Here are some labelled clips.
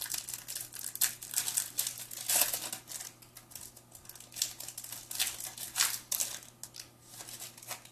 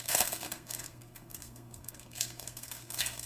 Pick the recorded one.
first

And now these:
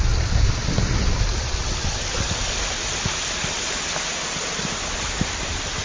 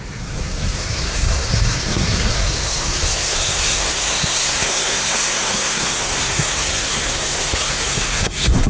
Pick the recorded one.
first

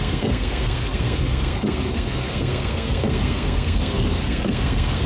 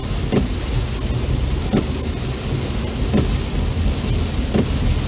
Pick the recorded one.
second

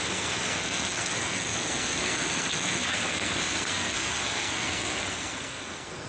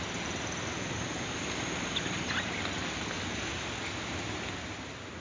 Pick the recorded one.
second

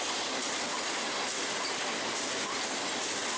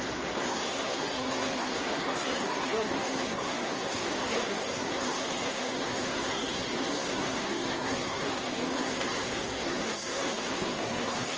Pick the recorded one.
first